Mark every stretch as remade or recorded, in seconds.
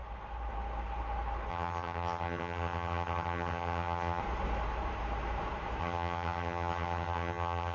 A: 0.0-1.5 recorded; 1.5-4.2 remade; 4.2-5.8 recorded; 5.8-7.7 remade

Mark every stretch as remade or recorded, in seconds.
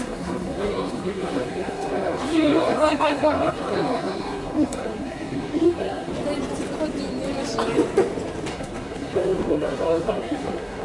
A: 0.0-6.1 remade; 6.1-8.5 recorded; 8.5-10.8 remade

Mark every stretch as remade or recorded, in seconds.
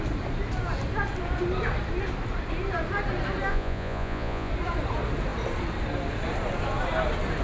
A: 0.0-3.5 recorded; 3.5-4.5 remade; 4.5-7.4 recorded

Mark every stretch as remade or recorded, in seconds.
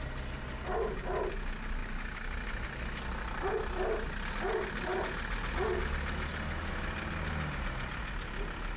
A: 0.0-8.8 recorded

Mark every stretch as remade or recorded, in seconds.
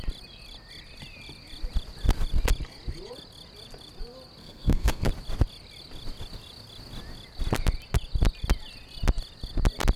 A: 0.0-4.4 recorded; 4.4-5.1 remade; 5.1-10.0 recorded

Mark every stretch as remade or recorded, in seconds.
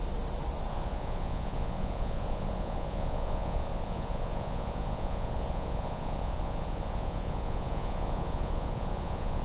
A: 0.0-0.7 recorded; 0.7-9.4 remade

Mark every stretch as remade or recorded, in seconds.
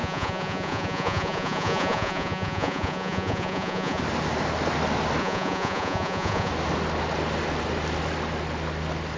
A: 0.0-4.0 remade; 4.0-5.2 recorded; 5.2-6.5 remade; 6.5-9.2 recorded